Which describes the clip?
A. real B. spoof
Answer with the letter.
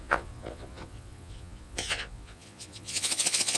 B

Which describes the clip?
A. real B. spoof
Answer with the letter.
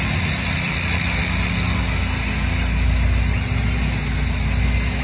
A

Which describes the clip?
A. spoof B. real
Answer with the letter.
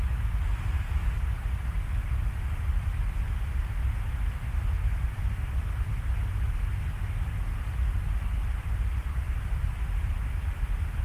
B